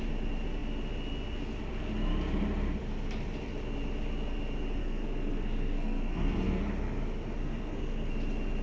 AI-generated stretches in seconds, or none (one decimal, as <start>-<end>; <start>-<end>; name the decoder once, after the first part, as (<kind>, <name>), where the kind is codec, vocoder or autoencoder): 4.8-6.6 (codec, SNAC); 7.4-8.1